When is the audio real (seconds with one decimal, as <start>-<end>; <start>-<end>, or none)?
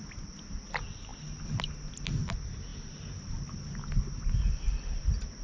0.0-5.4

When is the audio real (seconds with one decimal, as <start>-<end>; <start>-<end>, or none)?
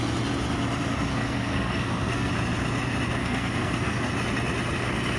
0.0-1.1; 2.3-3.2; 4.1-5.2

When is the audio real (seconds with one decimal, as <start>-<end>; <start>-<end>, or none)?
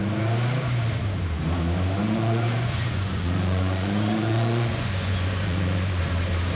0.0-2.0; 6.0-6.6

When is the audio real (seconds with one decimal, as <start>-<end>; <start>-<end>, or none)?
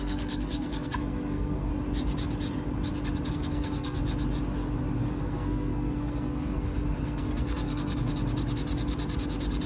1.7-3.3; 4.0-5.1; 8.1-9.7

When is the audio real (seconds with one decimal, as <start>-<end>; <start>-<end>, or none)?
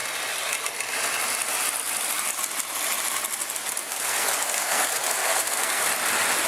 0.0-3.8; 5.8-6.5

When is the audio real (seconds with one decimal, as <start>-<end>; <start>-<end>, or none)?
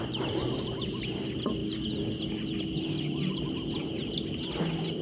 0.0-5.0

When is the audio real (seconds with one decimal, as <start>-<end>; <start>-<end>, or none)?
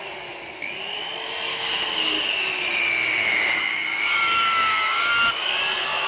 0.0-1.5; 2.3-3.2